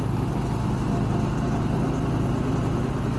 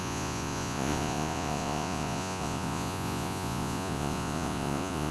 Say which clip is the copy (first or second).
second